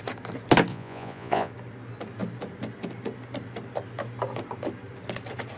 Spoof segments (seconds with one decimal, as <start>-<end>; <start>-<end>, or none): 0.7-1.5